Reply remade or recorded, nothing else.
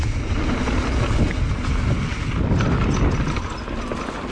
recorded